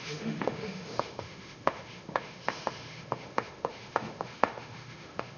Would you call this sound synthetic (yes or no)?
yes